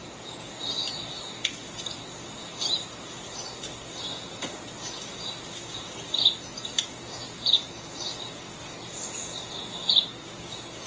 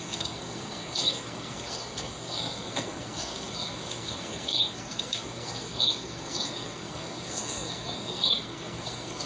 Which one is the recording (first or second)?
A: first